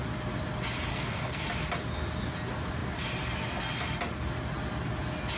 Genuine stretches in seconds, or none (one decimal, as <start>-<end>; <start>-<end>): 0.0-0.9; 1.4-5.4